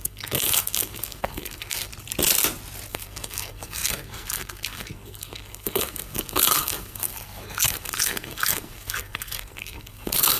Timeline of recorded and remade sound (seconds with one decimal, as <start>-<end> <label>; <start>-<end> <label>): 0.0-1.9 remade; 1.9-2.9 recorded; 2.9-10.4 remade